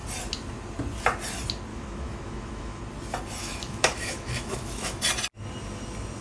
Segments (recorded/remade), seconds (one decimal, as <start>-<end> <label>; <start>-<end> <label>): 0.0-1.7 recorded; 1.7-2.8 remade; 2.8-3.4 recorded; 3.4-5.0 remade; 5.0-6.2 recorded